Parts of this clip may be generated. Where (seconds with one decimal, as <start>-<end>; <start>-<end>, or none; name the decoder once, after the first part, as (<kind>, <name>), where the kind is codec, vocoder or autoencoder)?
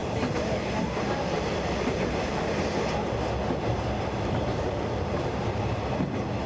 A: 0.0-2.4 (vocoder, BigVGAN v2); 3.7-5.6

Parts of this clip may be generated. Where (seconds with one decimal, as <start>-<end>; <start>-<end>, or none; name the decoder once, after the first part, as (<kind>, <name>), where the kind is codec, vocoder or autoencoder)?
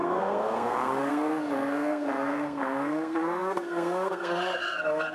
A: 0.0-5.1 (codec, SNAC)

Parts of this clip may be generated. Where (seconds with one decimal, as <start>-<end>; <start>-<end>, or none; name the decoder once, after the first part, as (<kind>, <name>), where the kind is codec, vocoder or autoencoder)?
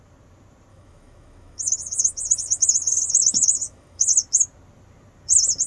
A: 0.7-4.1 (autoencoder, DAC-VAE)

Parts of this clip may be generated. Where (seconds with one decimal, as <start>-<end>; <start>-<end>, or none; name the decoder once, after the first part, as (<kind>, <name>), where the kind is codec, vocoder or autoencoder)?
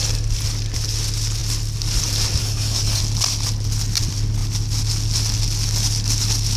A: 2.4-3.0 (codec, DAC)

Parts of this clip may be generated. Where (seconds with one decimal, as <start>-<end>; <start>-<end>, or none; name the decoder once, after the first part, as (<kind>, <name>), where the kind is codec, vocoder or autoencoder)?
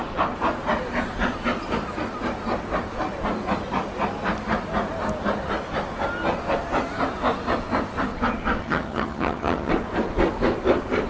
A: 8.6-9.7 (vocoder, HiFi-GAN)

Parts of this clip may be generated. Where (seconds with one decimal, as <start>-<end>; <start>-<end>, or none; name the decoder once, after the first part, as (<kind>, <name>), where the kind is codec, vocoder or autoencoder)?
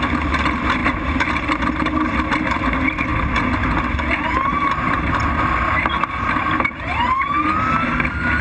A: none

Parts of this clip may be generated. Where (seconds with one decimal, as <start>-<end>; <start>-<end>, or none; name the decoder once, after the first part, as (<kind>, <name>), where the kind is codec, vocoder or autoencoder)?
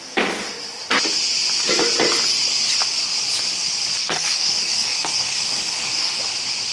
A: 4.0-6.2 (codec, DAC)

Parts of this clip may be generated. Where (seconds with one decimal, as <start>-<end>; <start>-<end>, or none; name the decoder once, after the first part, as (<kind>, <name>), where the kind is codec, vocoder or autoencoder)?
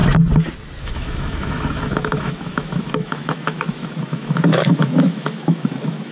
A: 0.8-6.1 (autoencoder, DAC-VAE)